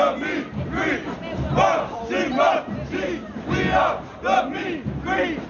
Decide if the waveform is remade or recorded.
recorded